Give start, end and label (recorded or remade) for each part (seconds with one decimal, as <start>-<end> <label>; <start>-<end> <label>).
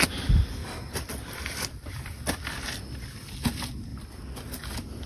0.0-0.6 recorded; 0.6-2.8 remade; 2.8-3.9 recorded; 3.9-4.4 remade; 4.4-5.1 recorded